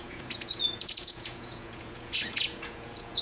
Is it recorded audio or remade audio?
remade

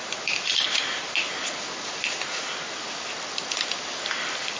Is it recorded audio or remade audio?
recorded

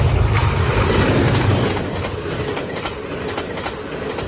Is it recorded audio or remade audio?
recorded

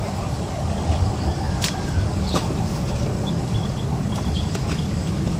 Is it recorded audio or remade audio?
remade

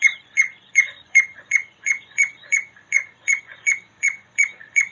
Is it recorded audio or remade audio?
remade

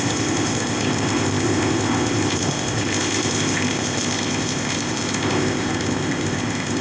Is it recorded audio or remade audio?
remade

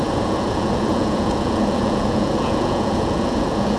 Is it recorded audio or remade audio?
remade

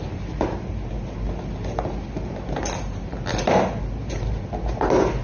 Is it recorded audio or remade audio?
recorded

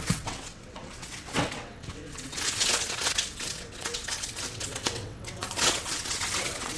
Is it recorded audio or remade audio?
remade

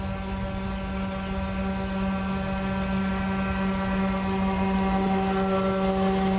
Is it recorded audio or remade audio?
recorded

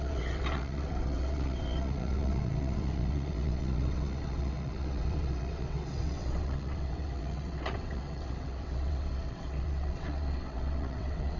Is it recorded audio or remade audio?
remade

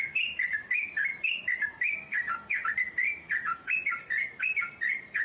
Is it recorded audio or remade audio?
remade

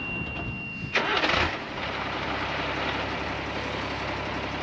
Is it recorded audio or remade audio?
recorded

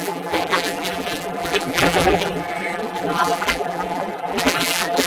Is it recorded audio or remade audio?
remade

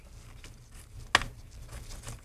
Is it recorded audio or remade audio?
recorded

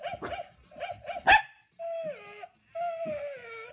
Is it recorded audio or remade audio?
recorded